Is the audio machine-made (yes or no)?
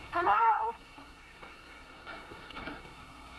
yes